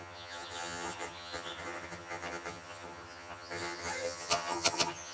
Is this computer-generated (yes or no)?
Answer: yes